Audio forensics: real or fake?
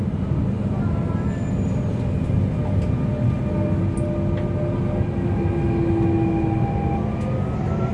real